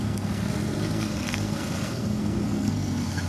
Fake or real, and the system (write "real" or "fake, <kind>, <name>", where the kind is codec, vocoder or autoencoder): fake, codec, SNAC